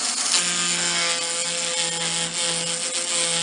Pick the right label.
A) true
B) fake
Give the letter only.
A